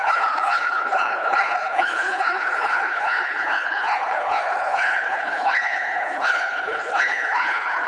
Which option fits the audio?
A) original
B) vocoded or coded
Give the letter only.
B